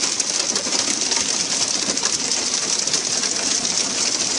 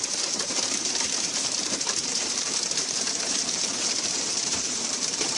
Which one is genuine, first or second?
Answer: first